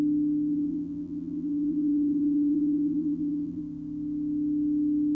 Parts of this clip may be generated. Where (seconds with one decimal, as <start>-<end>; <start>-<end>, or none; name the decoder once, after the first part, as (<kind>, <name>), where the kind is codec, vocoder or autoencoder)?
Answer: 0.5-3.6 (vocoder, BigVGAN v2)